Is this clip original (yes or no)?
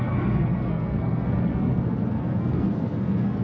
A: no